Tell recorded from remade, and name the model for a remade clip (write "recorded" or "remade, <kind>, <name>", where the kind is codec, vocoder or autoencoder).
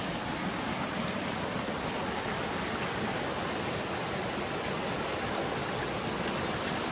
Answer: recorded